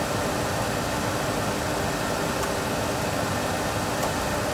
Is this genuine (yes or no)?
yes